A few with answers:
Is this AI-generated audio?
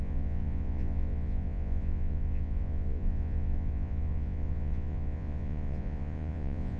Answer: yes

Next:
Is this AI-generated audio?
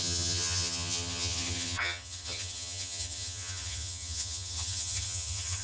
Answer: yes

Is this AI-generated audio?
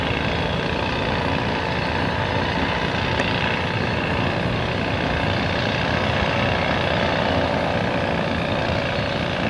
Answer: no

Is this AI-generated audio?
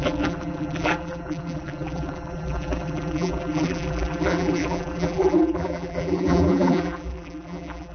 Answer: yes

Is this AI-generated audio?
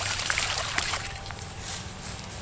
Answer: yes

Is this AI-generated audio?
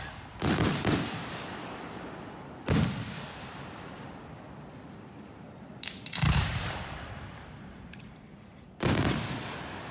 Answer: yes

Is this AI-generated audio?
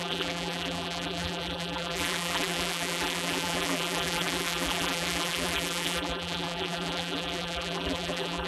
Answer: yes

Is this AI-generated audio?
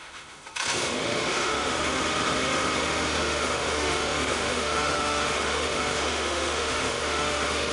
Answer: yes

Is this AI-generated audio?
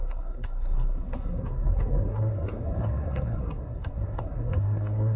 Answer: yes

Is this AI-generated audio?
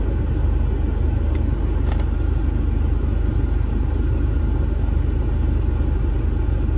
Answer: no